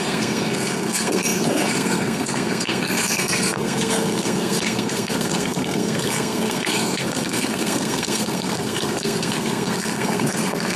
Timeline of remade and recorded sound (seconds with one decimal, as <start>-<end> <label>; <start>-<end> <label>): 0.0-10.8 remade